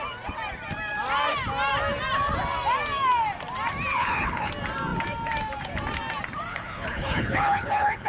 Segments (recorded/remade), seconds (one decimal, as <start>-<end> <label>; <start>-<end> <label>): 0.0-3.9 recorded; 3.9-4.5 remade; 4.5-6.5 recorded; 6.5-8.1 remade